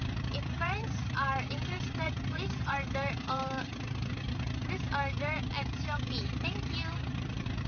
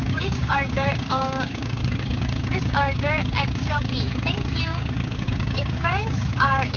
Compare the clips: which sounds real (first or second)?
first